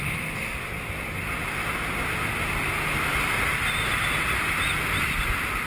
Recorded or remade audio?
recorded